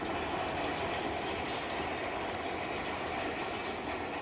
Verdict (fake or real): real